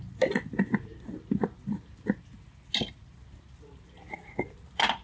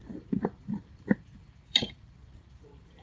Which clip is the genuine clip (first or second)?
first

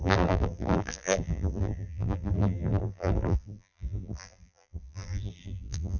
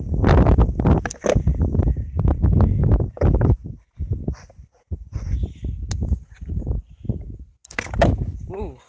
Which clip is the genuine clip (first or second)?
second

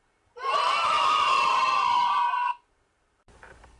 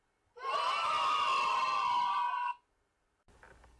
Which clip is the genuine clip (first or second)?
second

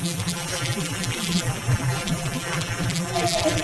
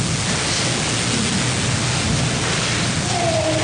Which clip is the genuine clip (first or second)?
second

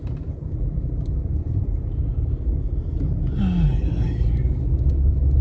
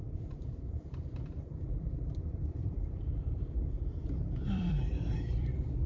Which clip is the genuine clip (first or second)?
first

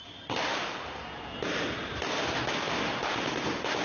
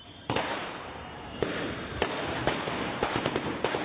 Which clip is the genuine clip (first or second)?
first